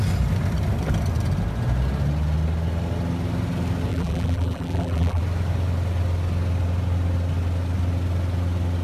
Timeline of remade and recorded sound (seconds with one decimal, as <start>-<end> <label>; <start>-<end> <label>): 0.0-3.9 recorded; 3.9-5.2 remade; 5.2-8.8 recorded